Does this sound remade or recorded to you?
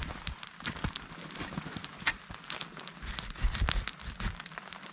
recorded